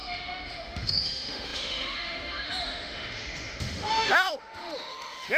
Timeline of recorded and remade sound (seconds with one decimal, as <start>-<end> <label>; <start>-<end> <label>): 0.0-5.4 remade